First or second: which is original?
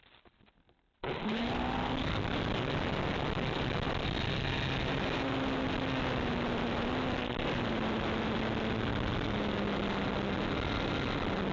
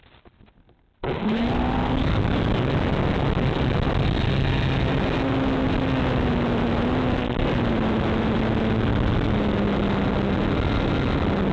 second